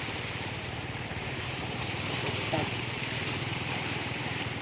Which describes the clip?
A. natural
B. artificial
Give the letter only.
B